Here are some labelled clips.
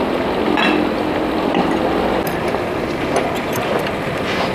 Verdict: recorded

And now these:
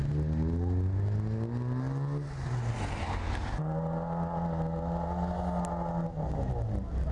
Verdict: recorded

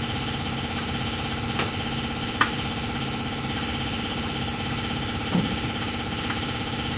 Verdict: recorded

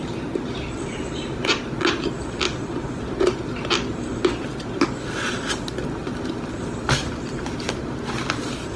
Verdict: recorded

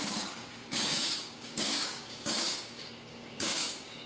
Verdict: remade